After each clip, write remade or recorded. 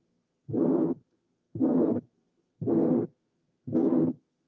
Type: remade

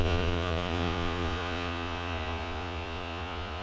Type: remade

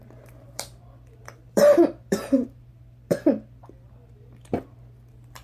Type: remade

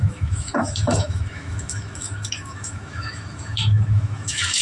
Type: remade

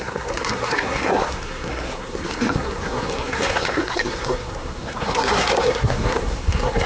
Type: remade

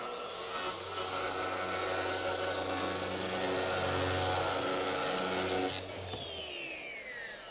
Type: recorded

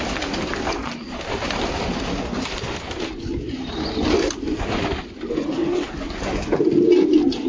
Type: recorded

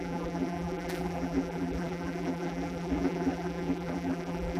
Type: remade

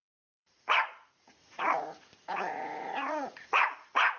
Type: remade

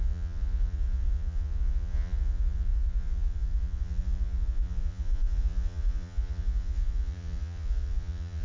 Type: remade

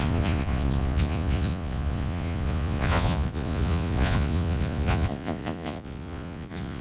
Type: remade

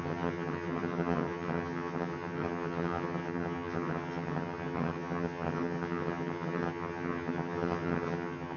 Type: remade